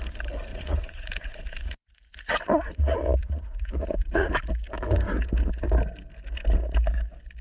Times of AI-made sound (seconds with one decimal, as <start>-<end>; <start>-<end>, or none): 0.5-4.3